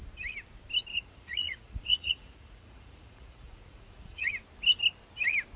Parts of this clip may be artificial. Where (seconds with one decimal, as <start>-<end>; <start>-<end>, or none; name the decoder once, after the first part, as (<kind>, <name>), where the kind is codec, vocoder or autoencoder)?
0.9-4.3 (vocoder, Vocos)